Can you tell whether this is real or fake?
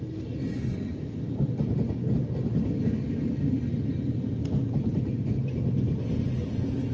real